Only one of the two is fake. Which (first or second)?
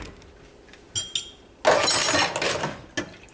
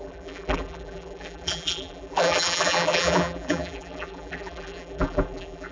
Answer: second